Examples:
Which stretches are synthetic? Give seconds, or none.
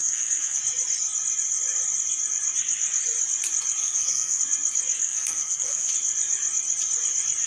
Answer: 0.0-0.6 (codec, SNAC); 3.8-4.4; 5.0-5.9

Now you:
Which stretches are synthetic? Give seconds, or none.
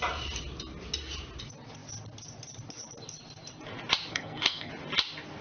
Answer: 4.1-4.7 (codec, SNAC)